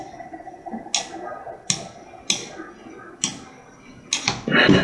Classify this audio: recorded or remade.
recorded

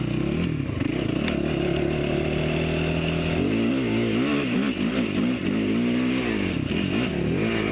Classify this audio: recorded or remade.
recorded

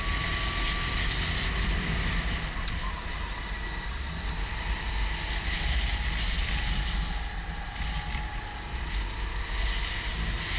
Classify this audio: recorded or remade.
recorded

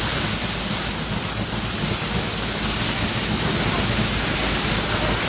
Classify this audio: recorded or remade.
recorded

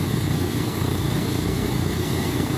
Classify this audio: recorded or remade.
remade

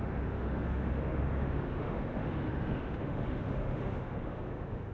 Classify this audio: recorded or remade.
remade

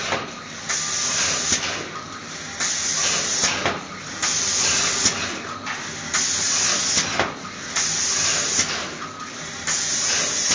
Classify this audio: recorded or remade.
recorded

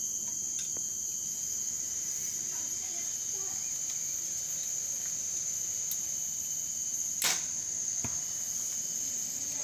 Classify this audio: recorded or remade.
recorded